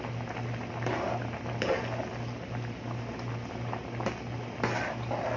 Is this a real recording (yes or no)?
yes